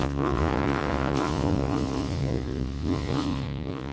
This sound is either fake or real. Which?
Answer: fake